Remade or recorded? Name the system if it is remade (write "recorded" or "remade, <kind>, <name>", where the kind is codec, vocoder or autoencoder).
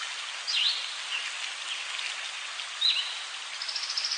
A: recorded